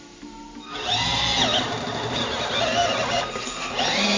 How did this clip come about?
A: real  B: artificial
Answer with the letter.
A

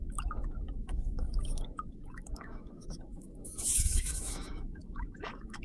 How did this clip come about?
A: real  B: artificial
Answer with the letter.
B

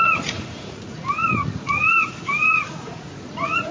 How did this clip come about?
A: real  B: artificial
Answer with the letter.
B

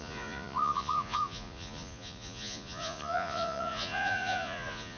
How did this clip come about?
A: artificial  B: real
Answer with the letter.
A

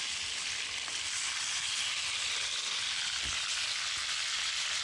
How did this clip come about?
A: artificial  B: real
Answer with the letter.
B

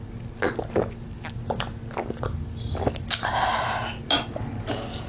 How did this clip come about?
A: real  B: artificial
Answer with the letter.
A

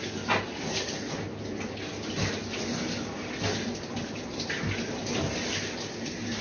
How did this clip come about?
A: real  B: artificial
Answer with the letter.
A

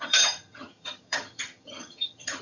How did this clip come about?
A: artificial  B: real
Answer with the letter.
A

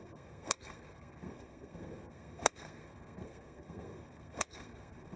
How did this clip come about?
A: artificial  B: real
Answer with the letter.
A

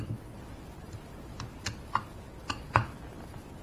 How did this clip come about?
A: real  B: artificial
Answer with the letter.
A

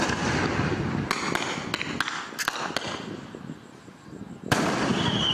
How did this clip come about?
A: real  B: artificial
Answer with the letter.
A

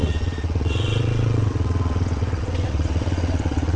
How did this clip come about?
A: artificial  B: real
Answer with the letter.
A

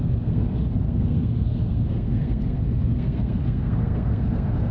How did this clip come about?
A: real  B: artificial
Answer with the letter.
B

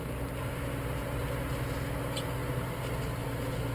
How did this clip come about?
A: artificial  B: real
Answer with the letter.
B